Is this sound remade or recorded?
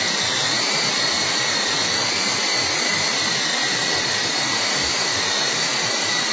recorded